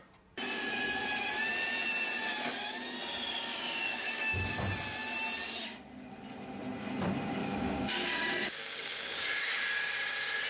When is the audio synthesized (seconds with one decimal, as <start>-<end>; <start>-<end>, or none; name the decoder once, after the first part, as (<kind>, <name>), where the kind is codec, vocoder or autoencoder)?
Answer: 3.5-4.5 (codec, DAC); 7.4-9.4